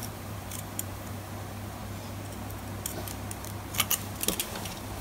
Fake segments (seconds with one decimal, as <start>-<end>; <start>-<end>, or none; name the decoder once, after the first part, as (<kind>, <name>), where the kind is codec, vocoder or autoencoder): 0.0-1.3 (vocoder, BigVGAN v2)